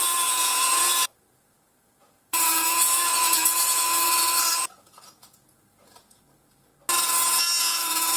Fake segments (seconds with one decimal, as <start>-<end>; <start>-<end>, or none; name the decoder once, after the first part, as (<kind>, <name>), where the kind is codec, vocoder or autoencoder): 0.0-6.7 (vocoder, Vocos); 7.6-8.2